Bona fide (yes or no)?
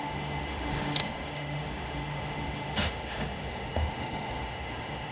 no